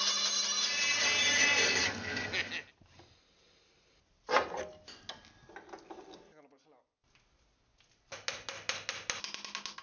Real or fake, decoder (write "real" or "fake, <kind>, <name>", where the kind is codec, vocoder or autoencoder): real